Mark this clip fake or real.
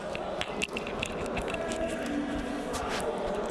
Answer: real